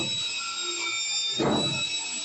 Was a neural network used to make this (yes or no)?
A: no